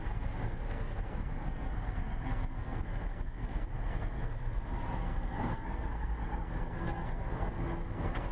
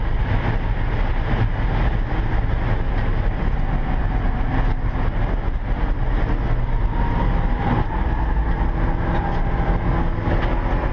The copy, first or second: first